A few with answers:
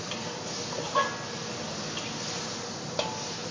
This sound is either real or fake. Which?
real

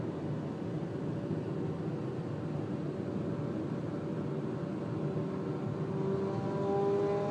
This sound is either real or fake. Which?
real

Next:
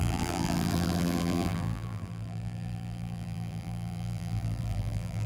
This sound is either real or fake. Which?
fake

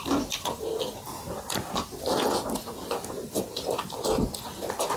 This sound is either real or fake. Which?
real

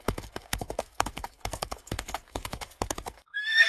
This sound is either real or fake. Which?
fake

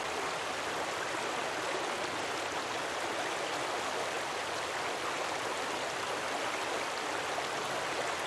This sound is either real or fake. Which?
real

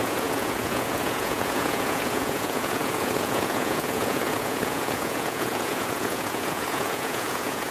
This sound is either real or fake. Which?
fake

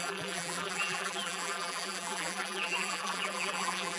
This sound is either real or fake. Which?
fake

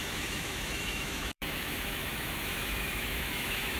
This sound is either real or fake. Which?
fake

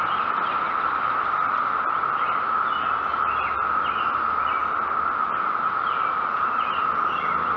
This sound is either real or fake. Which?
real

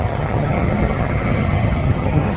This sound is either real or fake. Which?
fake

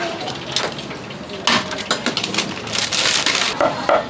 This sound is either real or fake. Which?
real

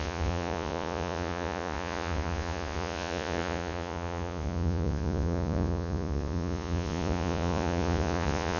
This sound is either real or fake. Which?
fake